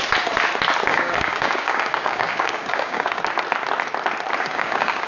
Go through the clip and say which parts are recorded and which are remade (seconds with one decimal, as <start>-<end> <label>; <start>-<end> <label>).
0.0-0.9 recorded; 0.9-3.2 remade; 3.2-4.5 recorded; 4.5-5.1 remade